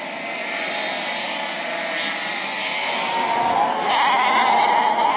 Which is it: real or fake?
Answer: real